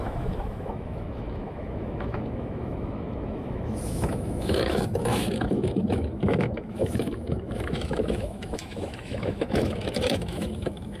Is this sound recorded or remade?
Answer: remade